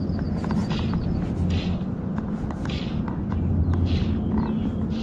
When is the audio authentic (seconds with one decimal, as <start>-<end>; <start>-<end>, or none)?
0.0-5.0